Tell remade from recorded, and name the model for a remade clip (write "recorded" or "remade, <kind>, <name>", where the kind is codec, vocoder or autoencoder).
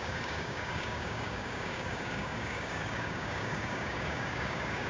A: remade, codec, DAC